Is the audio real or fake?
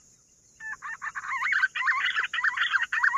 real